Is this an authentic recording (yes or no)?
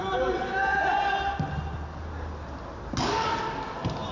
yes